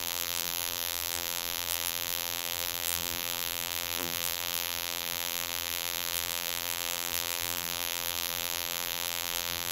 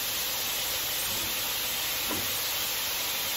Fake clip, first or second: first